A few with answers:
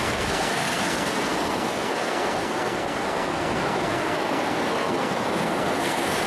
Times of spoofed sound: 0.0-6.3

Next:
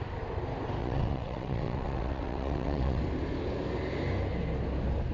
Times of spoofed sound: 0.8-3.0